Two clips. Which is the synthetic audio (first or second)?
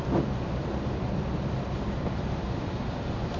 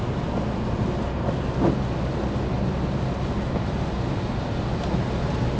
first